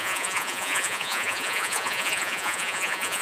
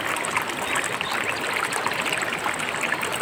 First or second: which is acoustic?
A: second